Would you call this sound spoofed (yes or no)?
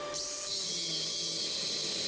no